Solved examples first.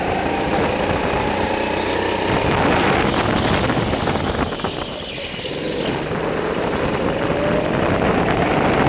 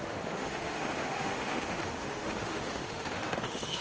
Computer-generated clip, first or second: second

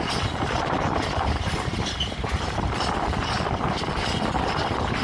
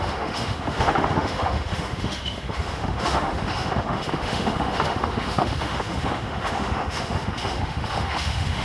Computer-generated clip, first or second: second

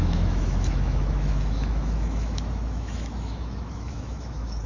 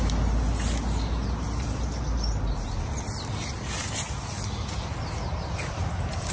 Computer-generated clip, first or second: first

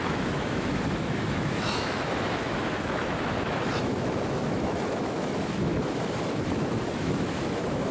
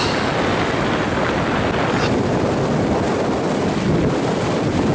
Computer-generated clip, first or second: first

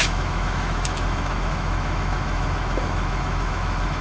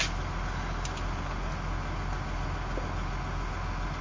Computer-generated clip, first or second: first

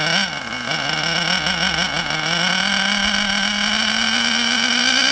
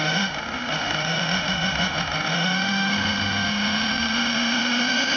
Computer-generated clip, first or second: second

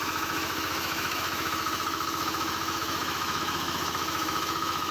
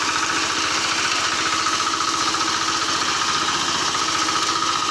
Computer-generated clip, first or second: first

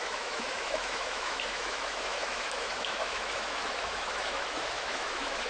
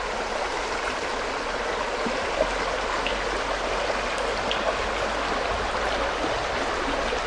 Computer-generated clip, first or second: first